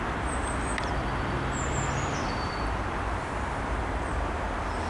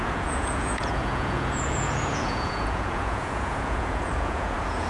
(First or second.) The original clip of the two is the first